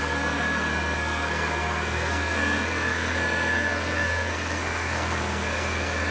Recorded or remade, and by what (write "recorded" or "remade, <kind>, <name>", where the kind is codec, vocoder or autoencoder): remade, codec, SNAC